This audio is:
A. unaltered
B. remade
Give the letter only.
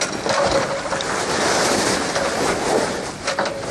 A